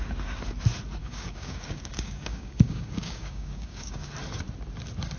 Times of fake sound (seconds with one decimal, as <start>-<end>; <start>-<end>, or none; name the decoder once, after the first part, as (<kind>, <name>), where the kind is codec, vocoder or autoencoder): 1.0-4.1 (codec, DAC)